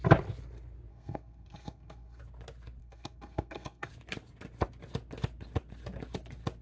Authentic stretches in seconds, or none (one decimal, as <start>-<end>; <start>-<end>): 0.0-0.9; 2.2-2.8; 3.9-6.6